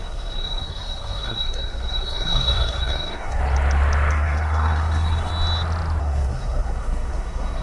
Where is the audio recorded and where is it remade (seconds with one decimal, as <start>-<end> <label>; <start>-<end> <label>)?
0.0-3.4 remade; 3.4-4.1 recorded; 4.1-5.3 remade; 5.3-6.0 recorded; 6.0-7.6 remade